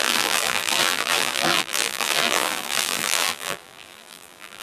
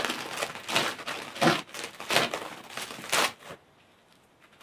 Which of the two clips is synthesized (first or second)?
first